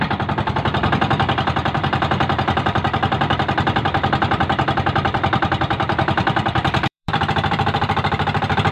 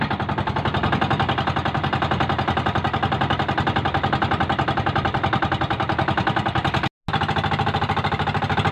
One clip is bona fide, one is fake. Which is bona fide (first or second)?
second